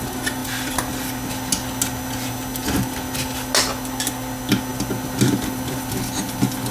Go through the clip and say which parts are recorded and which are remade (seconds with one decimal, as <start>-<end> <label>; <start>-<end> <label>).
0.0-6.7 recorded